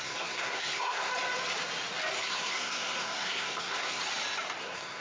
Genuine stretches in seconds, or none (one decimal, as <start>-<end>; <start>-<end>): 1.1-2.2; 4.0-4.6